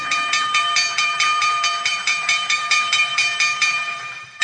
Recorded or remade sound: remade